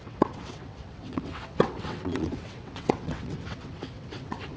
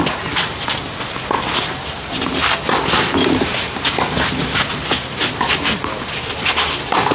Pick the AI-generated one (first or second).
first